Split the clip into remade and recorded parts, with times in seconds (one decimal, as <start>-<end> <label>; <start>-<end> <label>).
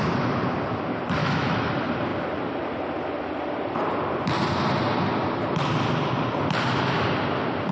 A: 0.0-1.2 recorded; 1.2-1.7 remade; 1.7-7.7 recorded